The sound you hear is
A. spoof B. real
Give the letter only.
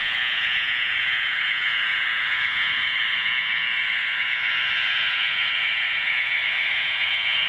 A